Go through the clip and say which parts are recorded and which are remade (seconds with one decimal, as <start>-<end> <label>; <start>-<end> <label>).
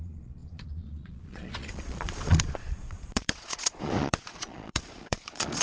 0.0-5.6 remade